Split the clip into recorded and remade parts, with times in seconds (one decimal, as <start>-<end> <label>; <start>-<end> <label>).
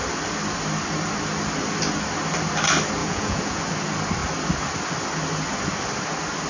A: 0.0-3.0 recorded; 3.0-3.6 remade; 3.6-6.5 recorded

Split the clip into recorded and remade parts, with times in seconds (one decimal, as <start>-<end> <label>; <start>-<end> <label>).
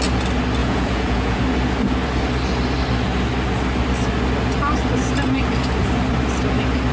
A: 0.0-0.6 recorded; 0.6-1.4 remade; 1.4-6.9 recorded